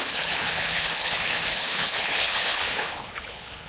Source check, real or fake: fake